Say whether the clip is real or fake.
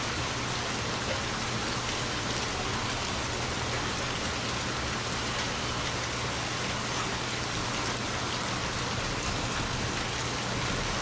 real